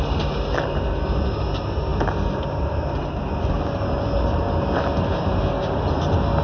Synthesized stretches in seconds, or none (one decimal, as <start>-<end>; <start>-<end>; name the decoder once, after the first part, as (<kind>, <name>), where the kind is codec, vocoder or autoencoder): none